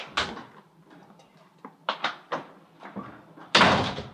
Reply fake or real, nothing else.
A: real